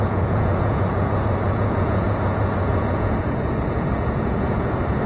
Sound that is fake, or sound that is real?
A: fake